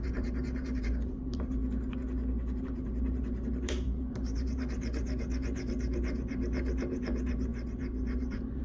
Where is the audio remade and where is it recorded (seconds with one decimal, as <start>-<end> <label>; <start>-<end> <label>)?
0.0-1.6 remade; 1.6-2.6 recorded; 2.6-8.6 remade